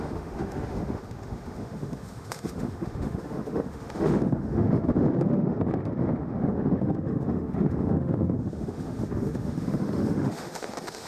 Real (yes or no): no